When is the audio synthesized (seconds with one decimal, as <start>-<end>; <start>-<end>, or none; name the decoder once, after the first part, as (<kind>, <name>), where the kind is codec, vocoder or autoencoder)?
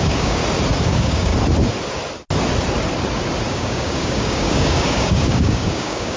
0.0-0.4 (codec, DAC); 0.9-1.3; 3.5-6.2